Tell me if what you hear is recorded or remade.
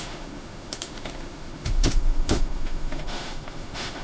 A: remade